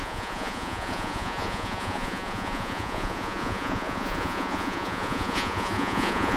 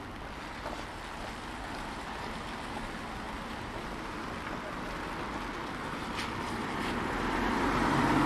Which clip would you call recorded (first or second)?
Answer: second